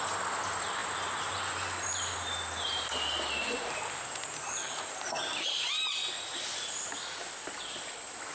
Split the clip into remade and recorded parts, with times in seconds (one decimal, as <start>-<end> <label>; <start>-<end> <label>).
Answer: 0.0-8.3 recorded